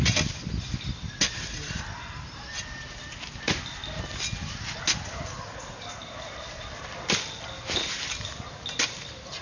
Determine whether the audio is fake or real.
real